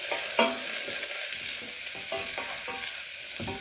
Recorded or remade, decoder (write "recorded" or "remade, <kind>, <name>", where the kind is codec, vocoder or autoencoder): recorded